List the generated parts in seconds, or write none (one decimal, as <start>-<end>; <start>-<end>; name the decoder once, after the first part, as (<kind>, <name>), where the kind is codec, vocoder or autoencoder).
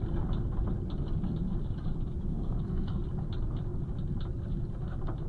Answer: 2.3-3.0 (codec, SNAC)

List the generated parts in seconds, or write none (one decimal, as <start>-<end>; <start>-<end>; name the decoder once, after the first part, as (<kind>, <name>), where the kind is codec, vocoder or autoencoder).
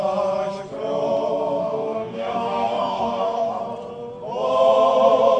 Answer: 1.6-3.6 (codec, DAC)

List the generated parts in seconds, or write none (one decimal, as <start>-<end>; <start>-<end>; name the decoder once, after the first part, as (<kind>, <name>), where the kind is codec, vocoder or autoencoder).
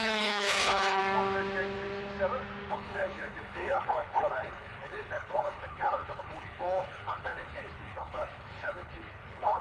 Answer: 0.0-1.0 (codec, HILCodec); 2.7-9.6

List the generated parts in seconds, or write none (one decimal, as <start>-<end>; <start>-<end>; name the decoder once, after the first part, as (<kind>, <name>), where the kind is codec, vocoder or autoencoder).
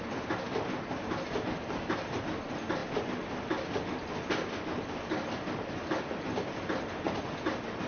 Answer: 2.8-7.2 (vocoder, BigVGAN v2)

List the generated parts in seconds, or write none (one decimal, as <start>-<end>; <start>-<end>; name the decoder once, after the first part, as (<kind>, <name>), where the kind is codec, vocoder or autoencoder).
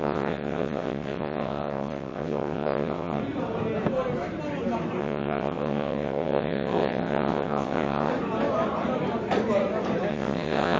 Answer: 0.0-3.2 (vocoder, WaveNeXt); 5.0-8.1; 10.1-10.8